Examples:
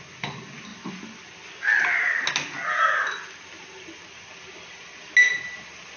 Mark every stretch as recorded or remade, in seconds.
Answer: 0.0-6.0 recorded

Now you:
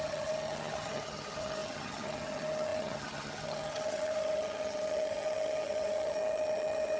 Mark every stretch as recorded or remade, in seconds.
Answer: 0.0-7.0 remade

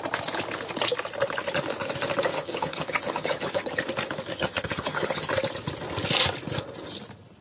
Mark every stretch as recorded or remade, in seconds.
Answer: 0.0-2.3 recorded; 2.3-3.8 remade; 3.8-4.3 recorded; 4.3-5.3 remade; 5.3-7.4 recorded